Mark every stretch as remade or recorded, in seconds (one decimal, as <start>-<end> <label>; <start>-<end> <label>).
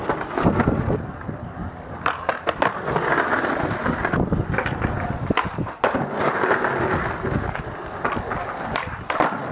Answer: 0.0-1.6 recorded; 1.6-2.3 remade; 2.3-9.5 recorded